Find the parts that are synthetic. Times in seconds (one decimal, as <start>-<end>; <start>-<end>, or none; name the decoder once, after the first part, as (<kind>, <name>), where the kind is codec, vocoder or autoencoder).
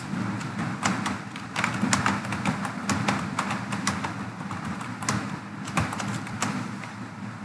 none